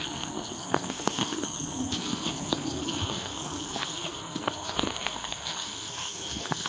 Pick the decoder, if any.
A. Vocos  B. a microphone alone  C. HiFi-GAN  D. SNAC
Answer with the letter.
D